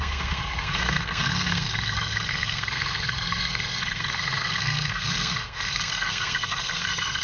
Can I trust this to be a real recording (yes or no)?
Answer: no